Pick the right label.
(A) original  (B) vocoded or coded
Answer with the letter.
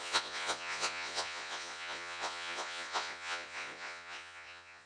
B